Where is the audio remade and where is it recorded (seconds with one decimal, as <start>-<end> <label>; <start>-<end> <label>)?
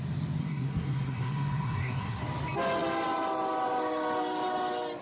0.0-0.4 recorded; 0.4-2.2 remade; 2.2-5.0 recorded